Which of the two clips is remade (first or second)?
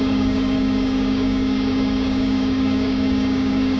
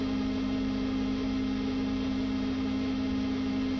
first